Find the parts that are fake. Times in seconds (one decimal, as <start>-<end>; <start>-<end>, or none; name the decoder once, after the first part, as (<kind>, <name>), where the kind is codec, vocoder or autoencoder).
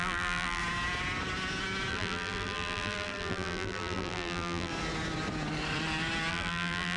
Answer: 0.0-0.6 (vocoder, BigVGAN v2); 1.9-4.7; 6.3-7.0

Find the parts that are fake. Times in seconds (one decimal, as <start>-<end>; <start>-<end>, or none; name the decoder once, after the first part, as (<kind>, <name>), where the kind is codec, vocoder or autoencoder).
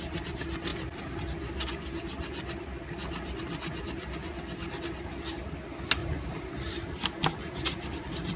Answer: 6.0-8.4 (vocoder, BigVGAN v2)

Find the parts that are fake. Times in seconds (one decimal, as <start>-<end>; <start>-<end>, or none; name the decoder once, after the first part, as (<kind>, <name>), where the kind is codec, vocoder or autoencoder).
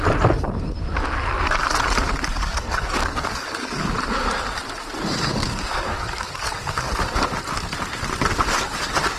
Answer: 2.3-3.9 (codec, DAC); 5.3-6.9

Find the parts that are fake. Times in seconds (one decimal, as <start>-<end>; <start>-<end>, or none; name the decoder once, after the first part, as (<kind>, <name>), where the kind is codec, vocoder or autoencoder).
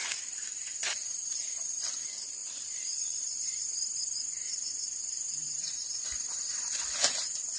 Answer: 0.0-1.8 (vocoder, BigVGAN v2); 2.4-5.7; 7.0-7.6